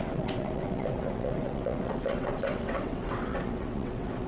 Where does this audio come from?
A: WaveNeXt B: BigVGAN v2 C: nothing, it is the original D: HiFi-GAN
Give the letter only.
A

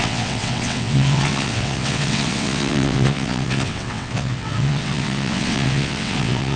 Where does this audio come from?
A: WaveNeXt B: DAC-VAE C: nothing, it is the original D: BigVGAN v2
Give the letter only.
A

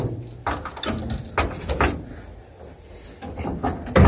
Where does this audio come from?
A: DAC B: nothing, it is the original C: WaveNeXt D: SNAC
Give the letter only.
B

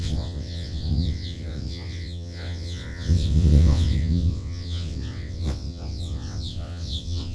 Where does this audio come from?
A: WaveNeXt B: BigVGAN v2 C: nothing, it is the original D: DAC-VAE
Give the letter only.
A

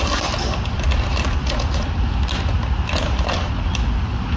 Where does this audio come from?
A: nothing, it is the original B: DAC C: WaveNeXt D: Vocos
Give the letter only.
A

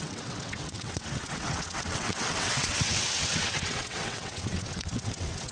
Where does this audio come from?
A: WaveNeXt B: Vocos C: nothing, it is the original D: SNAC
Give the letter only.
A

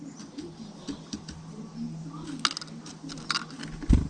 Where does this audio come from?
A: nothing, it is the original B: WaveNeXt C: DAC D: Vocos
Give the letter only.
A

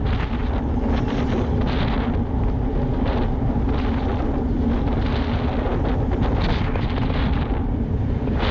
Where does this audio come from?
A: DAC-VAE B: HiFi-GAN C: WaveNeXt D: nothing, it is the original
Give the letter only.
D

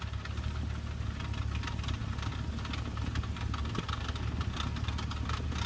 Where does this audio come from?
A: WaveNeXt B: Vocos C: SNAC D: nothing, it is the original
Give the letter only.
D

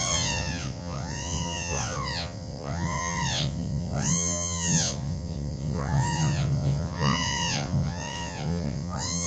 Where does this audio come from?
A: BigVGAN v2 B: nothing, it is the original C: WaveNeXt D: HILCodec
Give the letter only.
C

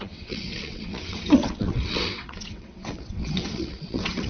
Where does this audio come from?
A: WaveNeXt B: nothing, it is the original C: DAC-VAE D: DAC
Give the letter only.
A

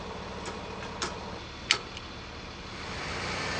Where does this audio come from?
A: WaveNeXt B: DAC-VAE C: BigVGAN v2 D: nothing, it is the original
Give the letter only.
D